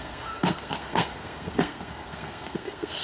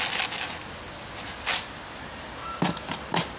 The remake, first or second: first